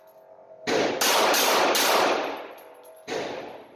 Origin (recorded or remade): recorded